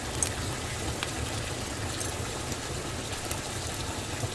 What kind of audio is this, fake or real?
real